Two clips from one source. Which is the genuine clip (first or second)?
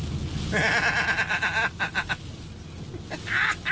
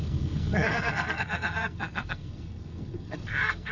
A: first